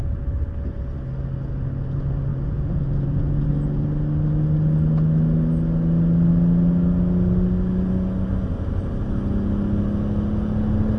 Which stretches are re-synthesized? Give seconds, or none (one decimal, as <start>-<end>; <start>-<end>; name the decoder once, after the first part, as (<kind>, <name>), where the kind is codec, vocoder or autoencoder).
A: 2.3-3.5 (vocoder, Vocos)